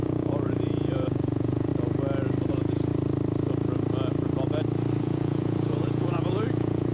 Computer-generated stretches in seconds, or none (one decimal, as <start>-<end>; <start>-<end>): 0.0-1.7; 2.5-2.9; 5.0-6.9

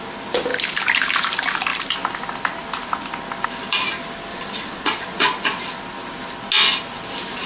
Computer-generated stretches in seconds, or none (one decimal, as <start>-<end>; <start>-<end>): 4.3-5.6